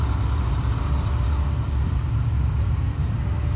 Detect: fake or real real